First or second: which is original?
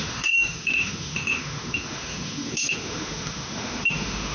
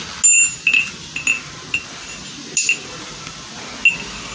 second